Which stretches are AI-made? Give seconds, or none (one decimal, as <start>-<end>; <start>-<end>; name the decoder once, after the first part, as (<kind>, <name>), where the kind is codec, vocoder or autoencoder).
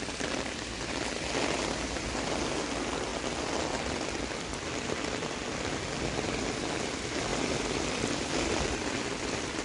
none